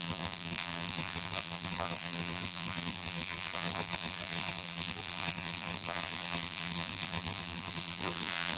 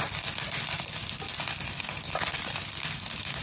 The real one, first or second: second